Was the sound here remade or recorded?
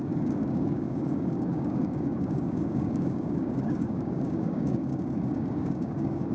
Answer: remade